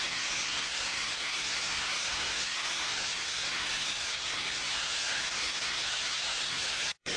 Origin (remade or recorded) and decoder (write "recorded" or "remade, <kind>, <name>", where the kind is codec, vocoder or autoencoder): remade, codec, SNAC